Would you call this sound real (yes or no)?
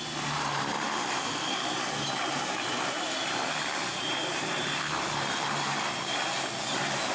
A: no